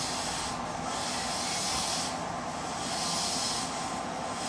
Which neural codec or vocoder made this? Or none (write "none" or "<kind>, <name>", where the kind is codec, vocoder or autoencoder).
none